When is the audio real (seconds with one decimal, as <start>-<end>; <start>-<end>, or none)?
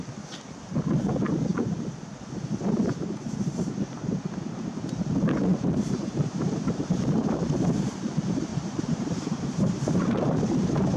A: 0.0-5.5; 8.0-8.5